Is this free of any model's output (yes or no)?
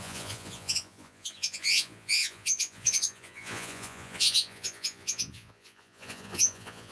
no